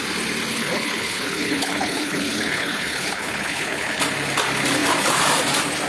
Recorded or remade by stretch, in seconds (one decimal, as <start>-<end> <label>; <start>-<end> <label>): 0.0-0.5 recorded; 0.5-4.0 remade; 4.0-5.9 recorded